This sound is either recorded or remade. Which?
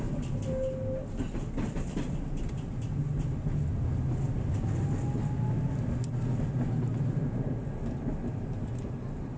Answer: recorded